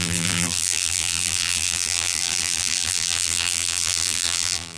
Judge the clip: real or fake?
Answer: fake